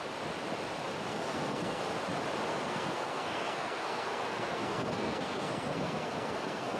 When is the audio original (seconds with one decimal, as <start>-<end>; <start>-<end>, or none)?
0.0-1.1; 1.8-2.5